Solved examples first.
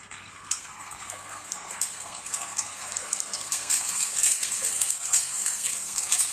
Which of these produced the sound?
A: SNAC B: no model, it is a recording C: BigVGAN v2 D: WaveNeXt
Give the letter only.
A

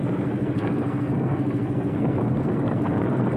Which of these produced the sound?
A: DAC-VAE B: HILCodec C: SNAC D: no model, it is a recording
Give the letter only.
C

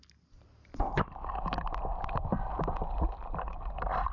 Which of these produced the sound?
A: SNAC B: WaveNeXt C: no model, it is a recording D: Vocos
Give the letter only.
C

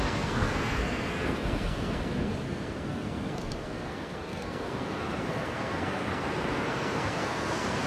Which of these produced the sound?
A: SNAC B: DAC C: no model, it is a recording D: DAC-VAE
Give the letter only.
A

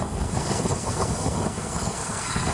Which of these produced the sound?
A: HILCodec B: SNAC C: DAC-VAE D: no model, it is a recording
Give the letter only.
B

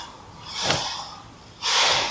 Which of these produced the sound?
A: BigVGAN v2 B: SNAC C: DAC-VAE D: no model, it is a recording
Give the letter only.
D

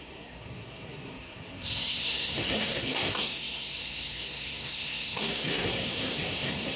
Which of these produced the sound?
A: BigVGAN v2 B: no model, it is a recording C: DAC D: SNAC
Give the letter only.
D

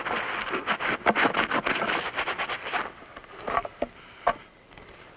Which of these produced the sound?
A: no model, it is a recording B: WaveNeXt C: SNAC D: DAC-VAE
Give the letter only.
A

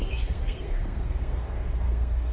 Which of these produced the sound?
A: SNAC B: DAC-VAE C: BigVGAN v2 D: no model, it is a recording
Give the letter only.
A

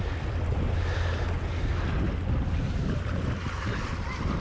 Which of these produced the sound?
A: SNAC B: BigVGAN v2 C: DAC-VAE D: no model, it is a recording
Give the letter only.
D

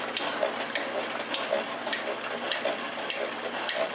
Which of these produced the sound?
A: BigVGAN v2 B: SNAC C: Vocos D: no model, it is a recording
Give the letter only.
D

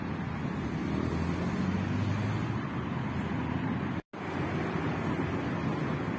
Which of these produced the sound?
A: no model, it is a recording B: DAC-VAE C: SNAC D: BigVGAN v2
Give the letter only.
A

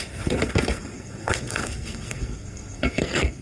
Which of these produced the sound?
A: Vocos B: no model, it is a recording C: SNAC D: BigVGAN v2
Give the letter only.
C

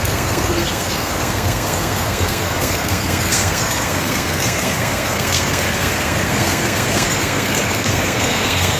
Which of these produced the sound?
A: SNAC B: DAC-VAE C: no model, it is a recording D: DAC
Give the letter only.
A